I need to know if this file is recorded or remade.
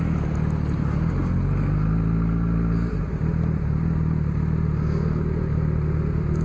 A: recorded